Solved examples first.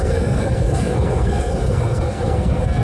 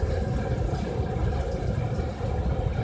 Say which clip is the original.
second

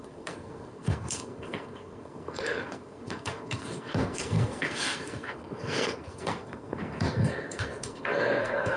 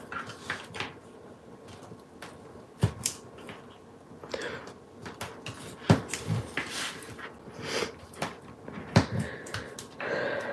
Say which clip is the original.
second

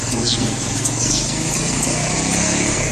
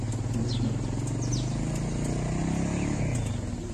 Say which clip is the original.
second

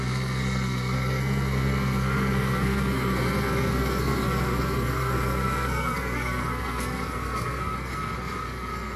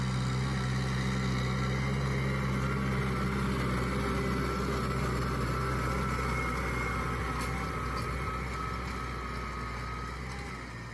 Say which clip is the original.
second